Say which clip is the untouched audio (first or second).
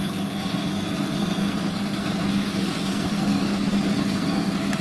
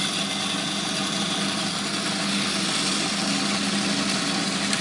second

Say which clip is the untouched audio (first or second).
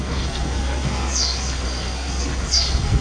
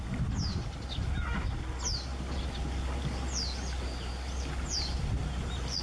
second